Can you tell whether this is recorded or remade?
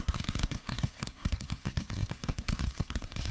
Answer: remade